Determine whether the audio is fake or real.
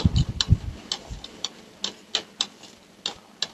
real